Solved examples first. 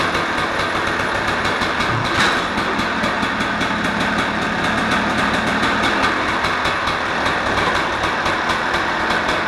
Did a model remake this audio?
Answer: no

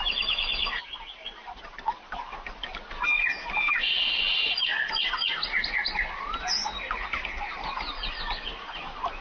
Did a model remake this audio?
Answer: no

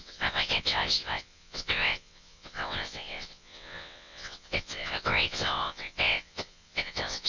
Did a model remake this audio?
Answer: yes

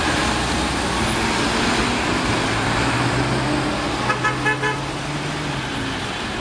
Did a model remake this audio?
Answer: no